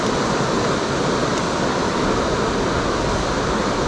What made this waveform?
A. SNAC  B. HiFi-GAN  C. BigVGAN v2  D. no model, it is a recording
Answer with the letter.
D